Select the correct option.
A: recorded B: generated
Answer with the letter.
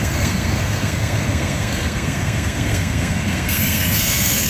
B